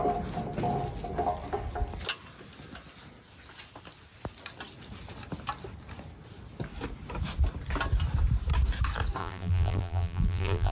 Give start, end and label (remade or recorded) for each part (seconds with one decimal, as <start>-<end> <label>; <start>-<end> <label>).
0.0-9.2 recorded; 9.2-10.7 remade